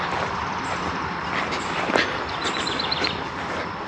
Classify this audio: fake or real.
real